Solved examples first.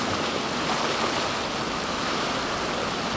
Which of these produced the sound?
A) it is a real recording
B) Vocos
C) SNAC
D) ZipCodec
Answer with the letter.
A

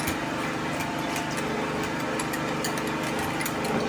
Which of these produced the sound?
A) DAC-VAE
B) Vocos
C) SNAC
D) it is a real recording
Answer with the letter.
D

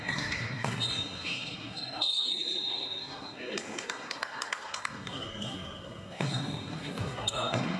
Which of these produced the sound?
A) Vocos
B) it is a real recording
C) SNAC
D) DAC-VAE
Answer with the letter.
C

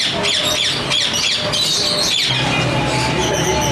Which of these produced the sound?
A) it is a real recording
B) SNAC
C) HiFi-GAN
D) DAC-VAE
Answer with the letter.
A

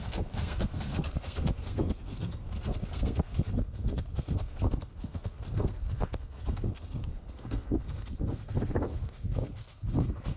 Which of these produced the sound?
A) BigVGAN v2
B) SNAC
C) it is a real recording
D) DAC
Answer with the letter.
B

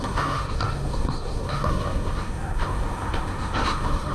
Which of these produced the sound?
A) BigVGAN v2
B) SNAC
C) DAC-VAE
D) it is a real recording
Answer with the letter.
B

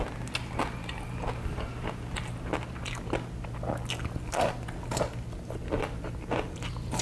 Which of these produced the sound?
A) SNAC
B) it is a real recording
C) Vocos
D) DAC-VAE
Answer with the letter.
B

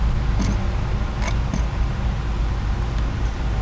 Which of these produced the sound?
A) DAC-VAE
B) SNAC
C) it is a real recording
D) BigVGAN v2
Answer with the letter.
C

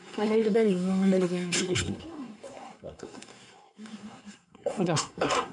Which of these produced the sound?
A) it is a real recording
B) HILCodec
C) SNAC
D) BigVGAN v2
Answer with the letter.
C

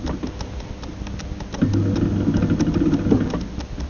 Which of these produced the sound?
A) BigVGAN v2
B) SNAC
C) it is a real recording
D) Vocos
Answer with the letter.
C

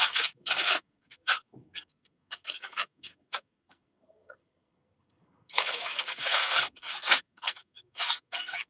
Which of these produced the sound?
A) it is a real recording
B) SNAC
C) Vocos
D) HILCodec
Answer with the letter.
B